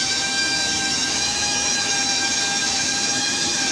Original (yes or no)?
no